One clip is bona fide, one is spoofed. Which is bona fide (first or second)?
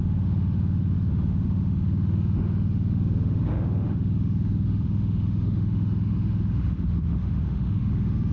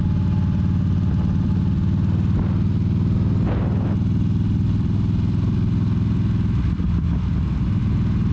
second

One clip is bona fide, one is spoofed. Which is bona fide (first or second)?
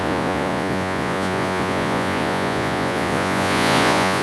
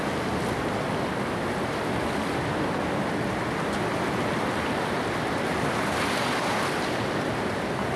second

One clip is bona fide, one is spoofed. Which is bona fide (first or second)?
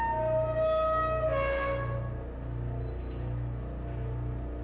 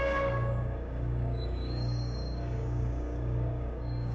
first